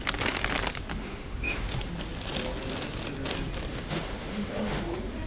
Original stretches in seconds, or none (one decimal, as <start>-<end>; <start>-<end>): 0.0-0.9; 1.9-3.7; 4.8-5.3